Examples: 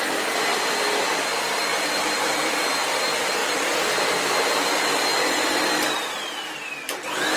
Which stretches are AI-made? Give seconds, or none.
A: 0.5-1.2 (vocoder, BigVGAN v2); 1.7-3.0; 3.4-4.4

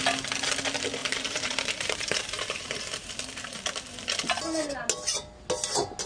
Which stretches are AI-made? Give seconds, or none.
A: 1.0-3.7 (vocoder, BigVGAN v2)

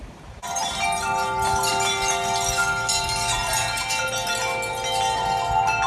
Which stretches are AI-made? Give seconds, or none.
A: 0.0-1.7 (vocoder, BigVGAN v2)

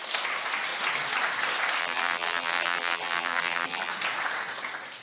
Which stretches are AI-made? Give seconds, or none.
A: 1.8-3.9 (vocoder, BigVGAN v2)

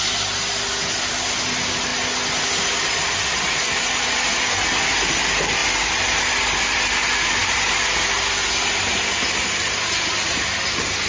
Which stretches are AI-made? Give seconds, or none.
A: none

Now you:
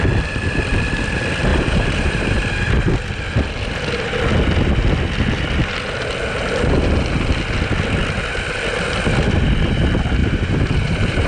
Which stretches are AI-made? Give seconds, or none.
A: 1.5-2.4 (vocoder, BigVGAN v2); 10.2-11.3

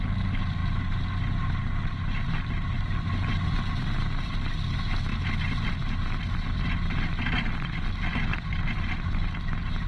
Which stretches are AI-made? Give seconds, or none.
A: 8.3-8.9 (vocoder, BigVGAN v2)